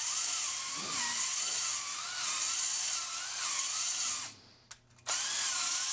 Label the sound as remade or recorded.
recorded